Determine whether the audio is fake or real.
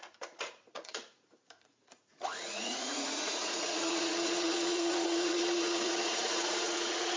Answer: fake